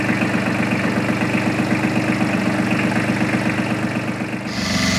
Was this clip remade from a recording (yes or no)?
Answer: no